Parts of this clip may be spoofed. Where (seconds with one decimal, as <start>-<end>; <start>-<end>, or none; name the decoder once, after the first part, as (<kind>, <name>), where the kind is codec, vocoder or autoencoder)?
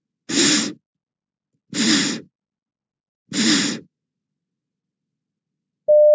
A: none